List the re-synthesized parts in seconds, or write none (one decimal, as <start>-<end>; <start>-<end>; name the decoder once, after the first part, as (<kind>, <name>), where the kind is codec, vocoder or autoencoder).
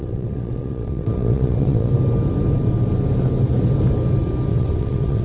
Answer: 0.0-1.9 (vocoder, WaveNeXt); 4.5-5.2